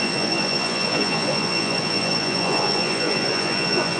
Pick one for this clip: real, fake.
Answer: fake